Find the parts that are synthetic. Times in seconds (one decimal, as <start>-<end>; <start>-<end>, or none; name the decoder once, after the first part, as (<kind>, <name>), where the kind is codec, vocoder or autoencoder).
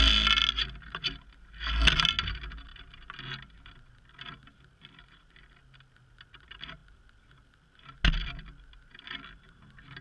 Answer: none